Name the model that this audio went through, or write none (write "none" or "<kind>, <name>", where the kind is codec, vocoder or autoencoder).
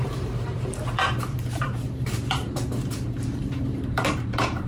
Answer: vocoder, BigVGAN v2